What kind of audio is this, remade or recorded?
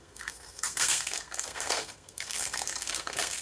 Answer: remade